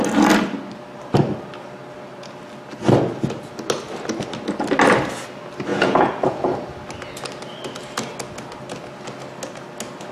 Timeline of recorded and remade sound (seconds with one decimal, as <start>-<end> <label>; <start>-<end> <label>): 0.0-5.7 recorded; 5.7-6.5 remade; 6.5-10.1 recorded